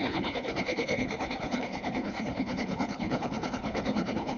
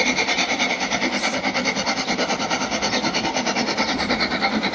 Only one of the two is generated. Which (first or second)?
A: first